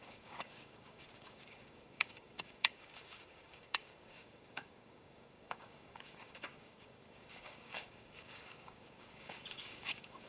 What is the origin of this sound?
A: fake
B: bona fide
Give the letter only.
A